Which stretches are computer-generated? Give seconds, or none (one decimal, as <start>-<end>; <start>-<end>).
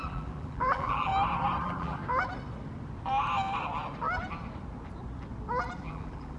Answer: 0.0-1.1; 1.6-2.0; 5.8-6.4